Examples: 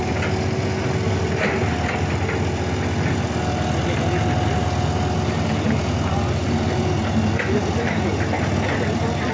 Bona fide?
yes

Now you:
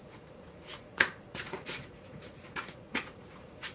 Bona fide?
no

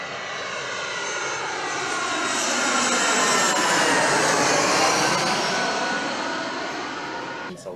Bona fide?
yes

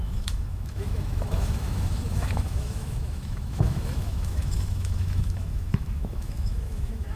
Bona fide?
no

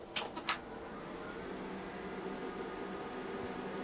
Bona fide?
yes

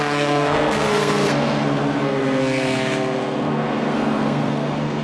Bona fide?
no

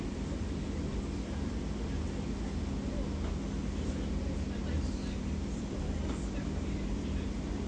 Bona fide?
yes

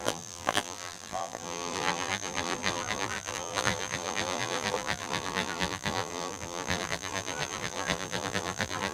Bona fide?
no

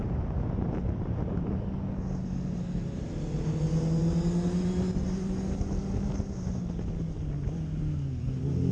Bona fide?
yes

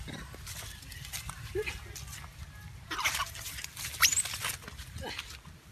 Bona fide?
yes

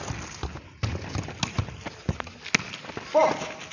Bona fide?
yes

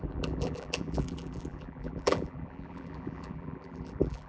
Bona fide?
no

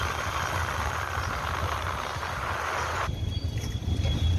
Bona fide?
yes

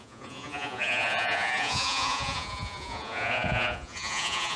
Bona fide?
no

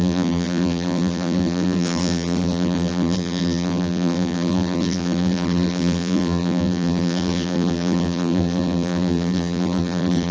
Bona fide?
no